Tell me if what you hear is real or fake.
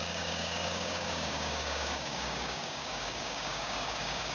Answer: fake